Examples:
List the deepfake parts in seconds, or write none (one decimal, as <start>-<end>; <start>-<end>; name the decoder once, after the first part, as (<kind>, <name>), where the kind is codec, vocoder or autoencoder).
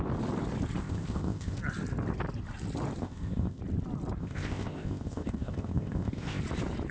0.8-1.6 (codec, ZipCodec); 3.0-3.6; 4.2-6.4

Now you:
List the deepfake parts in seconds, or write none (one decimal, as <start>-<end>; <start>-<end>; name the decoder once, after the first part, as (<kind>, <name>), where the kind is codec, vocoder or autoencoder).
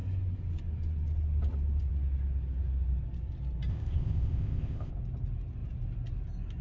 3.7-4.9 (codec, ZipCodec)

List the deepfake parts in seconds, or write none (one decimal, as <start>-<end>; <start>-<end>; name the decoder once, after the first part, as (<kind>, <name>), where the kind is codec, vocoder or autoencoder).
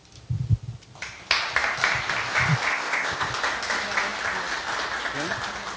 2.7-3.3 (codec, ZipCodec)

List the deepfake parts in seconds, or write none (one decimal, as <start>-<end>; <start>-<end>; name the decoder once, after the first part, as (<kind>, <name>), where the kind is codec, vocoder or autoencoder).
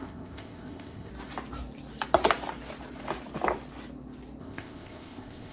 0.0-1.1 (codec, ZipCodec); 4.4-5.5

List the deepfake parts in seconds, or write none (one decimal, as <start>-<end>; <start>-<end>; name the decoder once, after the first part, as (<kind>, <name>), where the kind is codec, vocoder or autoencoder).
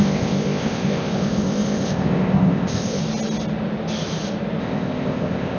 0.0-3.0 (codec, ZipCodec); 4.6-5.6